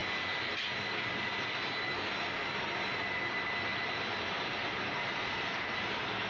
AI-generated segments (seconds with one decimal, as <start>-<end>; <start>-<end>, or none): 3.7-4.4

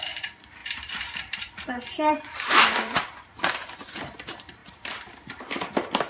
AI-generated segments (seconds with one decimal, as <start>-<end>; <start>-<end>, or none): 0.0-6.1